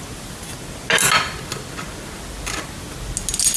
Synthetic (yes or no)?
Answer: no